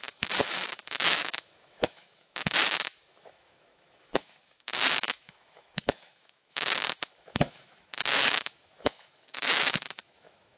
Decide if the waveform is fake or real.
fake